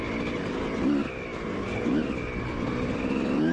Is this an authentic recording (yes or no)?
yes